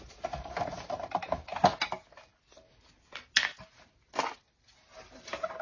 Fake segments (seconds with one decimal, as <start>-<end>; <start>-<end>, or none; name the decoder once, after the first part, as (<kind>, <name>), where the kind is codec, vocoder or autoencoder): none